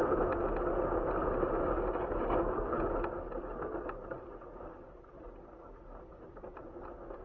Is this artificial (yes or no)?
no